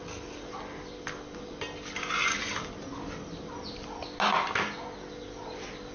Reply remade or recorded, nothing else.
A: recorded